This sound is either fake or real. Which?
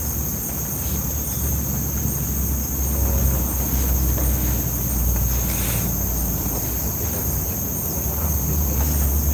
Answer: real